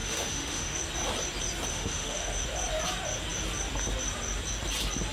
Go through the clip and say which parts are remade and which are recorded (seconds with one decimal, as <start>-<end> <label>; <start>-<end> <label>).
0.0-0.8 remade; 0.8-1.7 recorded; 1.7-2.3 remade; 2.3-5.1 recorded